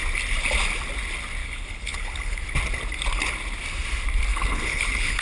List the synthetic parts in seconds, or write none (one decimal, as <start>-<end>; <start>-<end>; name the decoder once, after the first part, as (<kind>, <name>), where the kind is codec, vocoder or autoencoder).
1.4-2.4 (codec, HILCodec); 4.3-5.2